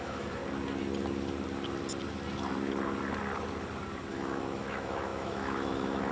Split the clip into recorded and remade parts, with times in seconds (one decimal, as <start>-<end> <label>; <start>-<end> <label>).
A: 0.0-0.4 remade; 0.4-4.1 recorded; 4.1-6.1 remade